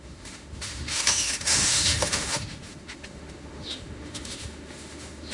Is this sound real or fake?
fake